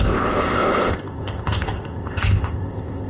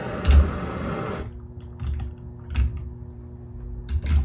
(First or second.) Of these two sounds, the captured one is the second